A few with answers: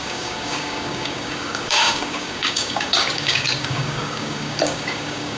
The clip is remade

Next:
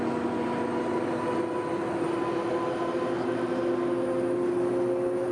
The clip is recorded